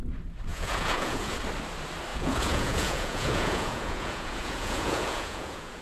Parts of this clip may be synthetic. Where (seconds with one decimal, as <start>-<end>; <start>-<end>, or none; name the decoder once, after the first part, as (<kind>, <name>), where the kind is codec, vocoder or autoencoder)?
0.5-1.3 (vocoder, Vocos); 2.1-5.8